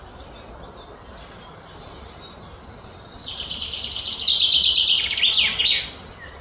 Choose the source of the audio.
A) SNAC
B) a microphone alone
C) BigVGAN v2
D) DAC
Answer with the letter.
B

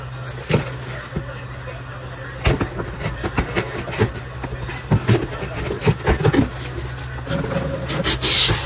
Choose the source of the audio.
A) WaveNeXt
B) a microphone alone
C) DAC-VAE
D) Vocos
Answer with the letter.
B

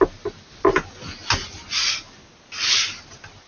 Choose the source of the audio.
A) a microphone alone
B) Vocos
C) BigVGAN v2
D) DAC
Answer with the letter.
A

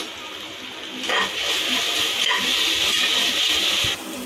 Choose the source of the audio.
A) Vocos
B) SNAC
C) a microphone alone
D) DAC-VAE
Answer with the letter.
C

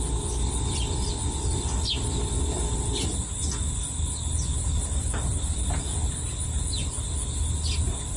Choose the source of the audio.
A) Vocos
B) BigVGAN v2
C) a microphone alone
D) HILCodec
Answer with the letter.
C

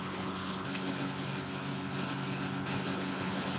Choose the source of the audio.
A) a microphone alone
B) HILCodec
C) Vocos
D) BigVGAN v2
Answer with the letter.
B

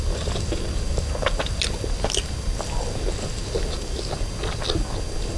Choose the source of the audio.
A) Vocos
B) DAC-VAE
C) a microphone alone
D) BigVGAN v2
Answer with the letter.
C